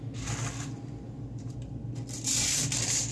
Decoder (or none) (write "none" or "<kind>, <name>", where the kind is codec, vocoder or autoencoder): none